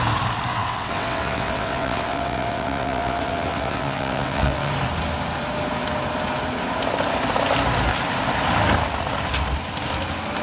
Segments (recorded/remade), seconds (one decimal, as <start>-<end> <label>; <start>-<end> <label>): 0.0-0.5 recorded; 0.5-4.7 remade; 4.7-10.4 recorded